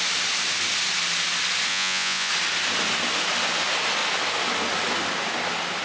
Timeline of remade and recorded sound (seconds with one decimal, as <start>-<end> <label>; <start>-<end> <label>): 0.0-1.7 recorded; 1.7-2.3 remade; 2.3-5.8 recorded